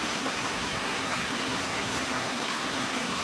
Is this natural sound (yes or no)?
no